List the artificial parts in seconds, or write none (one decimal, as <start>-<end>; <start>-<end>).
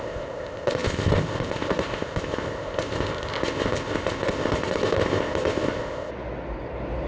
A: 0.0-6.1